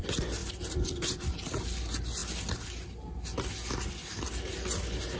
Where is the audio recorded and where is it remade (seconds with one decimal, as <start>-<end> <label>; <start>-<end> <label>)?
0.0-5.2 recorded